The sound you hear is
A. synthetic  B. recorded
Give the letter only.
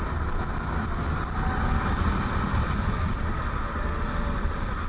B